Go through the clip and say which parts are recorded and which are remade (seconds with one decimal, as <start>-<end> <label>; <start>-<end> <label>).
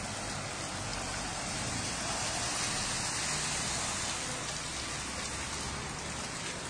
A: 0.0-0.9 recorded; 0.9-1.9 remade; 1.9-6.7 recorded